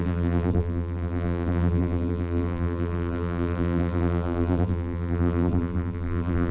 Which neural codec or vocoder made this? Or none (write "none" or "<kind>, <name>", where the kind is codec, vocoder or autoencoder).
vocoder, BigVGAN v2